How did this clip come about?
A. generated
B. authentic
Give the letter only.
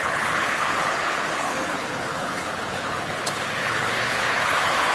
A